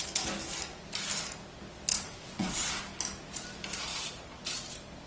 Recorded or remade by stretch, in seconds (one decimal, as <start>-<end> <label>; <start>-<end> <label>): 0.0-1.9 recorded; 1.9-2.8 remade; 2.8-5.1 recorded